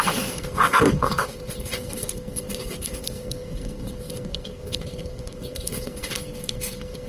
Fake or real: fake